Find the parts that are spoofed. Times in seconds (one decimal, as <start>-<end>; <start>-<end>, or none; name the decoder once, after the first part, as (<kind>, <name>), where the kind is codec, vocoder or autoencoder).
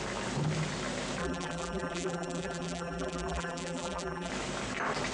1.2-4.3 (vocoder, BigVGAN v2)